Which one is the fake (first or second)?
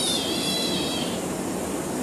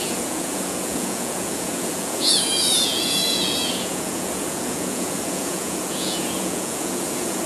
second